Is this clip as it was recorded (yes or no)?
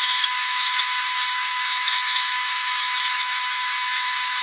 no